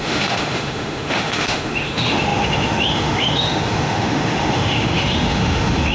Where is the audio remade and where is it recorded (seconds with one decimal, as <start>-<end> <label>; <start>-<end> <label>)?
0.0-5.9 remade